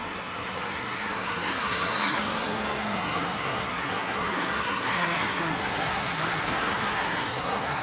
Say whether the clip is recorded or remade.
remade